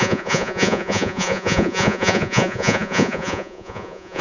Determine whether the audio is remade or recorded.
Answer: remade